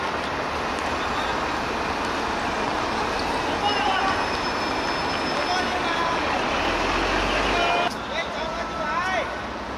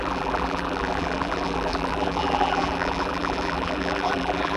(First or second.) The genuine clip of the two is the first